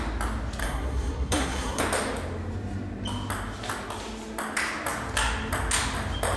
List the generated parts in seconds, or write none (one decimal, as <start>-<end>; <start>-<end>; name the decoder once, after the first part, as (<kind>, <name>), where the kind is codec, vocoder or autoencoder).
0.6-1.8 (codec, SNAC)